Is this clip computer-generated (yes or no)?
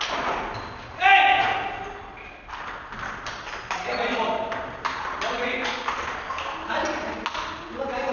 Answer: no